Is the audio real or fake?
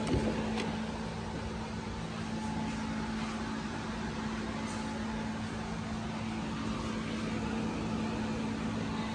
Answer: real